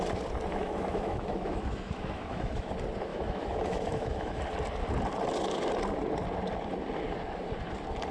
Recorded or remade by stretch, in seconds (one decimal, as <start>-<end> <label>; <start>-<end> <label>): 0.0-0.5 recorded; 0.5-2.7 remade; 2.7-3.1 recorded; 3.1-4.4 remade; 4.4-8.1 recorded